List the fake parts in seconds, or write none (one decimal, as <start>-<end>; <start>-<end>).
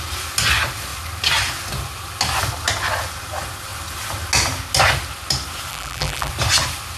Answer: 5.7-6.3